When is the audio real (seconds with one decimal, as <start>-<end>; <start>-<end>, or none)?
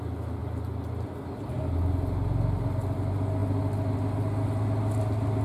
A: 0.0-5.4